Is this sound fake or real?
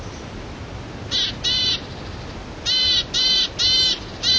real